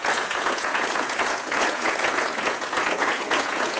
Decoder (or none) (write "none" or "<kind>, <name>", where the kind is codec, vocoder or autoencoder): vocoder, Vocos